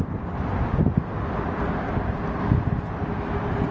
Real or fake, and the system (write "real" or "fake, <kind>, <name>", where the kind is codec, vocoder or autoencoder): real